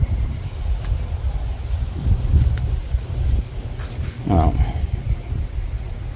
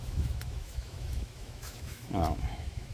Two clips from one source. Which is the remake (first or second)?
second